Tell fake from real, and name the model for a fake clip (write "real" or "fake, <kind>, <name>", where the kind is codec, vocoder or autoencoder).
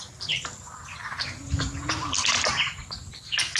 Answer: real